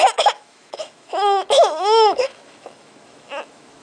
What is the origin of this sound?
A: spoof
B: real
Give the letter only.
A